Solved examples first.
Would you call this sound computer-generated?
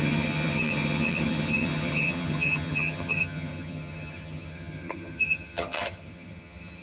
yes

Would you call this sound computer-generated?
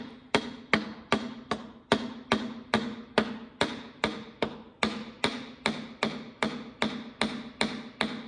no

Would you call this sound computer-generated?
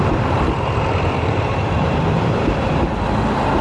yes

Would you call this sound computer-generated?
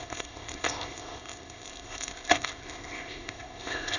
yes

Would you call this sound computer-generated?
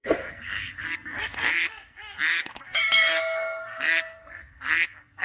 yes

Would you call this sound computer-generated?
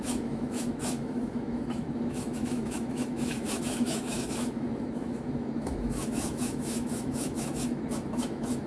yes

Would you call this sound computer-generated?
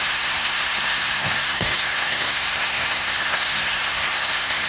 yes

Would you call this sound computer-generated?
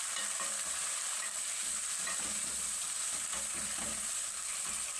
yes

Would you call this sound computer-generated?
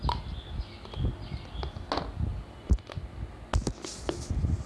no